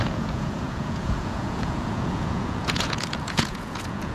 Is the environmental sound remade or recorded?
remade